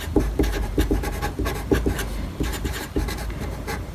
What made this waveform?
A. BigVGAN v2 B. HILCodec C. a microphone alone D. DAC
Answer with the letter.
A